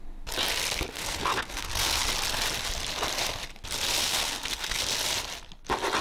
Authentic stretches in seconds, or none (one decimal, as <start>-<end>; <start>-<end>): 0.0-0.9; 2.0-4.0; 4.8-6.0